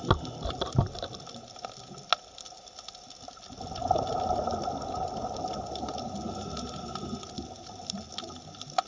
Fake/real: real